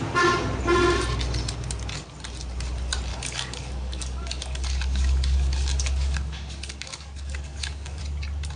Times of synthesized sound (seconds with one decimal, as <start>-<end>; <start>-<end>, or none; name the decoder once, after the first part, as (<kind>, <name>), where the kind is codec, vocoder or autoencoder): 3.1-8.0 (codec, DAC)